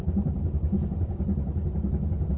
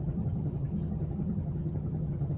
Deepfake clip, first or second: second